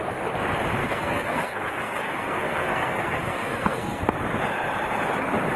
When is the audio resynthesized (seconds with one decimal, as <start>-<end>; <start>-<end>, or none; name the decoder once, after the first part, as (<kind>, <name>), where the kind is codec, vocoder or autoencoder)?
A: 0.8-4.2 (codec, SNAC)